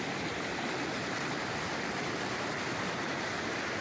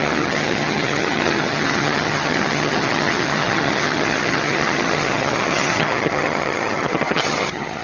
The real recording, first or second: first